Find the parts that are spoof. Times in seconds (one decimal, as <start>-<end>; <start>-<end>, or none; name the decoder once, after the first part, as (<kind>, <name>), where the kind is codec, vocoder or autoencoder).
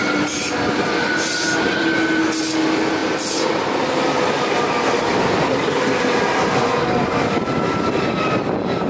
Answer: none